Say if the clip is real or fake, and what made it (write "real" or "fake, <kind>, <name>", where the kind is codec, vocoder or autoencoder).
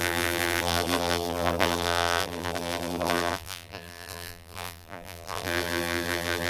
fake, vocoder, BigVGAN v2